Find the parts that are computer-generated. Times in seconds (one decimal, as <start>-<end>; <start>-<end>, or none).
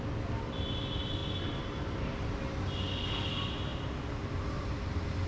none